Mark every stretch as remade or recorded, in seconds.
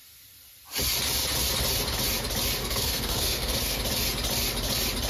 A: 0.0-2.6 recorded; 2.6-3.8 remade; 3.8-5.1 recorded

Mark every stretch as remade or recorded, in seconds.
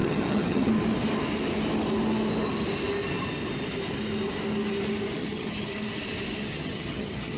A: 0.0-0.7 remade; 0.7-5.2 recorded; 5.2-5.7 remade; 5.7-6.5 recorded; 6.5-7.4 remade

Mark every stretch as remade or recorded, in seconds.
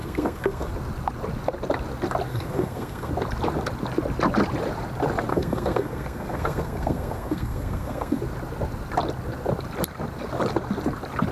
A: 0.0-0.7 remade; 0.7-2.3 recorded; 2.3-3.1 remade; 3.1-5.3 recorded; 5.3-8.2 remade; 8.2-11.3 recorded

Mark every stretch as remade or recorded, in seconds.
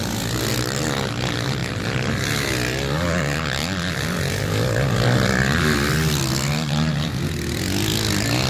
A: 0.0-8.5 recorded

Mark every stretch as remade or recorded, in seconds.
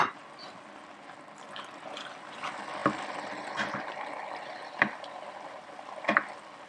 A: 0.0-6.7 recorded